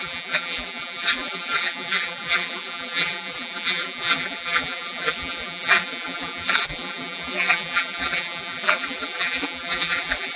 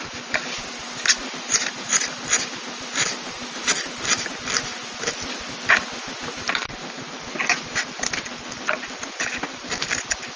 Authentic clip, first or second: second